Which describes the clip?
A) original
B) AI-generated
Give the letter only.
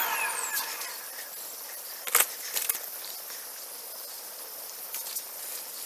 A